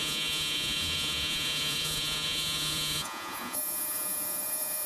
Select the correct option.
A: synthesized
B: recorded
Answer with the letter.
A